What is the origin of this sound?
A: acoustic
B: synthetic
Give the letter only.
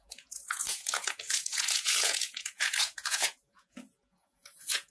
B